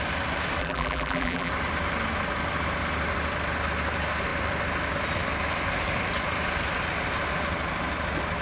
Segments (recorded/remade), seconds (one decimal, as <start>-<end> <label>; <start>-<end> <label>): 0.0-0.6 recorded; 0.6-1.5 remade; 1.5-8.4 recorded